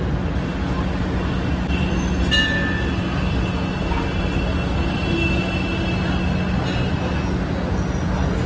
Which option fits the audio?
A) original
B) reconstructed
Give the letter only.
A